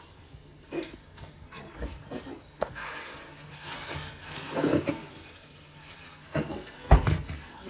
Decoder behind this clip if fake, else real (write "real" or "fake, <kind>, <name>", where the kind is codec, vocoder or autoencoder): fake, codec, SNAC